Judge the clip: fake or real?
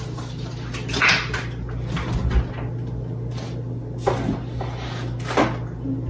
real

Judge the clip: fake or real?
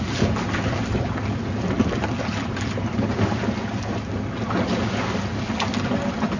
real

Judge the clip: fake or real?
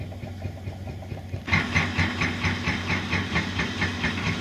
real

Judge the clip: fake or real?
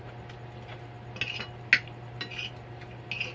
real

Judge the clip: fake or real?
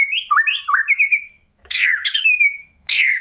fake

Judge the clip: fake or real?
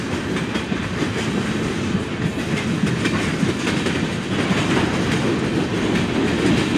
real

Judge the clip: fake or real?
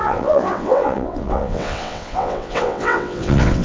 fake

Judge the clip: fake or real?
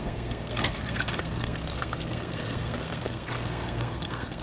fake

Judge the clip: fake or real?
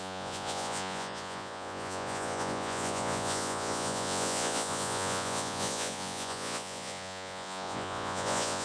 fake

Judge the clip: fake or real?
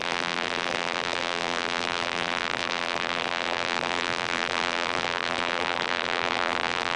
fake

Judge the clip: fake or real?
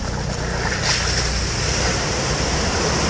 real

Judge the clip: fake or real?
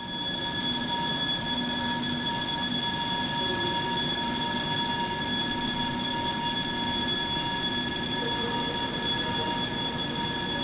real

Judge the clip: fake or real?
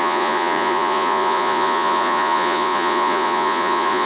fake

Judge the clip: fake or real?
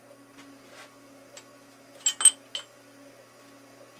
real